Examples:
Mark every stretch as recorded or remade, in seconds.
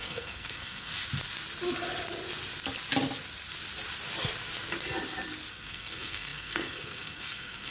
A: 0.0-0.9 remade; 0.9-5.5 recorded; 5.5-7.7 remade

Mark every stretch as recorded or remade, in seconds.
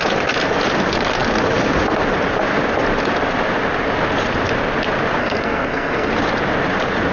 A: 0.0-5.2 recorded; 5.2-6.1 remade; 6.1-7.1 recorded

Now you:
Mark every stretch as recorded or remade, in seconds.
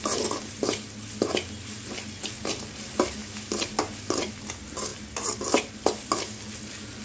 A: 0.0-7.0 recorded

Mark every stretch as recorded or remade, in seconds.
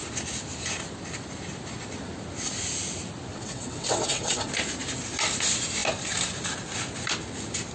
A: 0.0-3.3 recorded; 3.3-4.5 remade; 4.5-7.7 recorded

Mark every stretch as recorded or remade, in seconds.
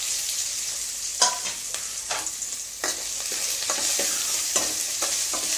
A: 0.0-1.1 remade; 1.1-4.3 recorded; 4.3-5.6 remade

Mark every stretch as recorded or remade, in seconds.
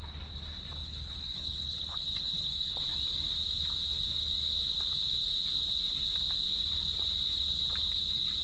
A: 0.0-0.8 recorded; 0.8-2.8 remade; 2.8-8.4 recorded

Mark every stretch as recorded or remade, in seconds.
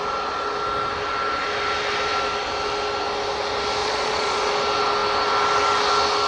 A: 0.0-3.8 recorded; 3.8-4.5 remade; 4.5-6.3 recorded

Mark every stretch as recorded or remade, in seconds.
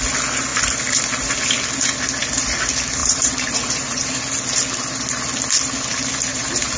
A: 0.0-3.0 recorded; 3.0-4.2 remade; 4.2-6.3 recorded; 6.3-6.8 remade